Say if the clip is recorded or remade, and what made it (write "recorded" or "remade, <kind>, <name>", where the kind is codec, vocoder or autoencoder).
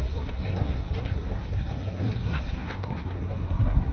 remade, codec, SNAC